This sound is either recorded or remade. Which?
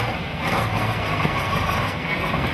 remade